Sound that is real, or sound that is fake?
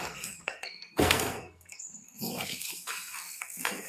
fake